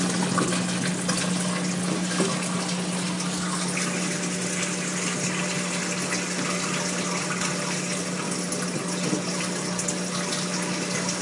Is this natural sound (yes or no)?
yes